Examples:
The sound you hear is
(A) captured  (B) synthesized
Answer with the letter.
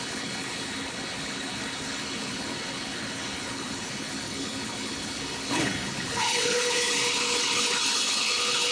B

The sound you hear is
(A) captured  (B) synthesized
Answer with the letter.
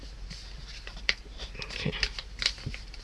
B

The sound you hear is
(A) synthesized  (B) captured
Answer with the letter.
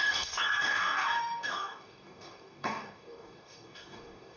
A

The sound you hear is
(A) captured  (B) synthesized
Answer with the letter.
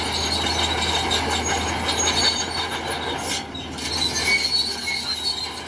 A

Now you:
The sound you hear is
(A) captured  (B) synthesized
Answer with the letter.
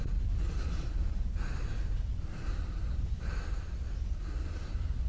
A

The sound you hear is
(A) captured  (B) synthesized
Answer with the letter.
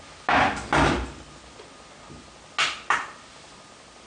A